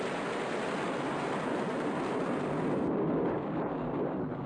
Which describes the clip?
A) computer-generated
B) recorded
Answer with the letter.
B